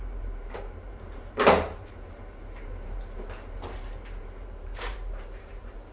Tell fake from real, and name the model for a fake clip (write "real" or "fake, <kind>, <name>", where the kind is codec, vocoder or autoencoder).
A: fake, vocoder, BigVGAN v2